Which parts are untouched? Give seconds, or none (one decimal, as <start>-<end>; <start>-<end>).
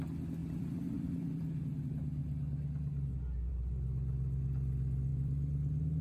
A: 0.0-0.4; 1.8-5.1